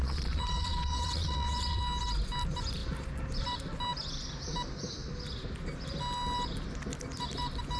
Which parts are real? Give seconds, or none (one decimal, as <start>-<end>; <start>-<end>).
1.8-7.8